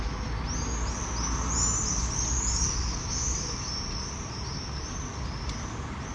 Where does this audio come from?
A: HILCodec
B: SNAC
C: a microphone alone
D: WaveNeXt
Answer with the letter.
C